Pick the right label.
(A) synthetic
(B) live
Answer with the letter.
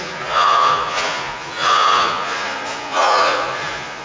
A